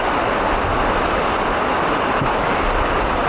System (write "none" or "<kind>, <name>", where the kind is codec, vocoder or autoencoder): none